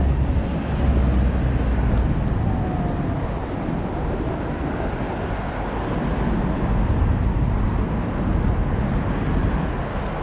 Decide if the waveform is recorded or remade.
recorded